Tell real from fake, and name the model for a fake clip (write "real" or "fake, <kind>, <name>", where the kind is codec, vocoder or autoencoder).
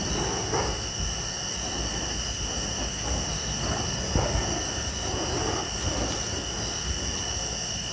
real